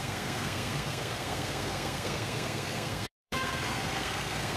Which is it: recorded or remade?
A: remade